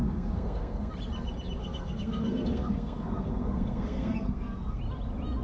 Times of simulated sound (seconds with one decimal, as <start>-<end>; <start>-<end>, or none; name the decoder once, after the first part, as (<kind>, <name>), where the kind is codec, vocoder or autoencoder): 0.0-0.9 (codec, SNAC); 1.6-4.8